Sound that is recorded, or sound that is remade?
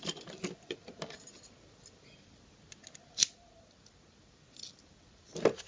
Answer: recorded